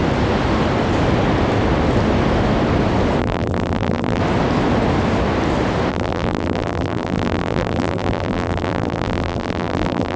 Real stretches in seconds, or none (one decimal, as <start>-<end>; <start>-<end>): 0.0-3.2; 4.2-5.9